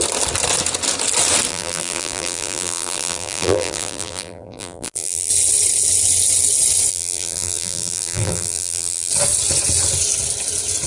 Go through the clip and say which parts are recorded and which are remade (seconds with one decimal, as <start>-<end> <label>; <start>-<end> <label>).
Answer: 0.0-1.5 recorded; 1.5-5.3 remade; 5.3-6.9 recorded; 6.9-9.1 remade; 9.1-10.9 recorded